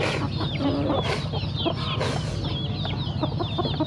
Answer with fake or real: real